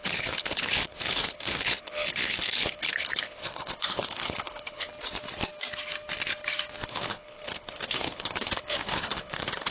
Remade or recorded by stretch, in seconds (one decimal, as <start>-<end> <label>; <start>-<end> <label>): 0.0-4.9 remade; 4.9-6.9 recorded; 6.9-9.7 remade